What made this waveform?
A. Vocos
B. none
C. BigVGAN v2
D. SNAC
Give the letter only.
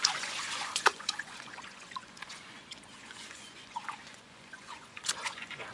A